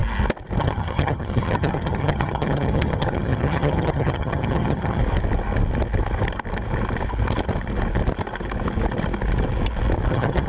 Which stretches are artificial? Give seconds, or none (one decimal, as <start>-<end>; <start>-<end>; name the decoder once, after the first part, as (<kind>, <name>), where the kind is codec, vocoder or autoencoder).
0.6-5.0 (vocoder, HiFi-GAN); 10.1-10.5